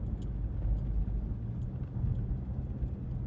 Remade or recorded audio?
recorded